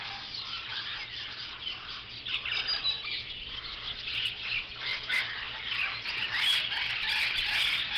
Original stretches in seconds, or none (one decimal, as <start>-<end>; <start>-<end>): 0.0-8.0